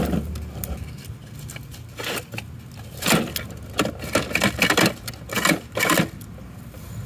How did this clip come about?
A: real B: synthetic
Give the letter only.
A